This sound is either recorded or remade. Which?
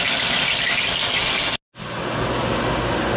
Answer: recorded